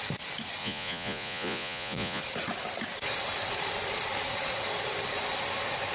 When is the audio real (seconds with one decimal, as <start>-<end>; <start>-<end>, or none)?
0.0-0.6; 2.2-5.9